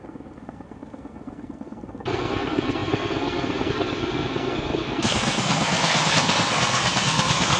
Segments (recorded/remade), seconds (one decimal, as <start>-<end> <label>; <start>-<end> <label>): 0.0-7.6 remade